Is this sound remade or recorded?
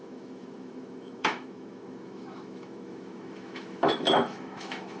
remade